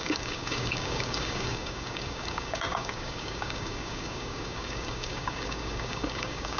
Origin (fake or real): fake